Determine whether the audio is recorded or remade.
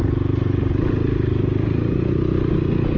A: recorded